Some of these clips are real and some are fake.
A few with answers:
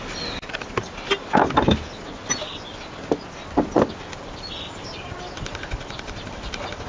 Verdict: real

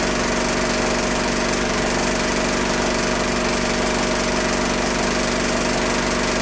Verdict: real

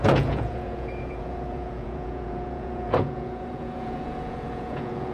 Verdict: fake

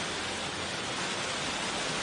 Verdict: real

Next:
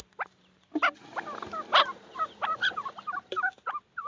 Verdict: fake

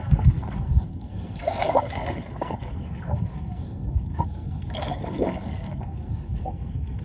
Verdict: fake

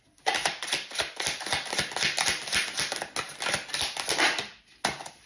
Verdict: real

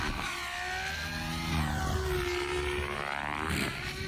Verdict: real